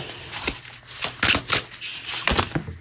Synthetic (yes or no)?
no